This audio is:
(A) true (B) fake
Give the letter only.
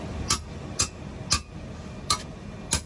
A